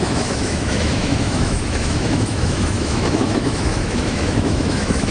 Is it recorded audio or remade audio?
remade